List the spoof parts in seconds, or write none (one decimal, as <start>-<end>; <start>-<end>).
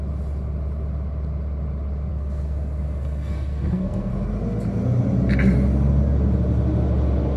2.1-4.1